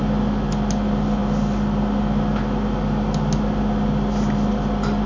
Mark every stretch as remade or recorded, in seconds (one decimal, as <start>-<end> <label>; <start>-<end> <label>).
0.0-5.1 recorded